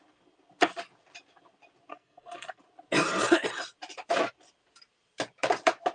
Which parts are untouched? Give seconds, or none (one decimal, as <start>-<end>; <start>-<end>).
0.0-1.9; 2.6-5.9